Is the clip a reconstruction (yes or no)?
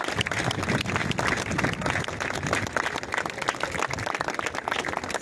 no